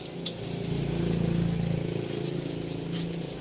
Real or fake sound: real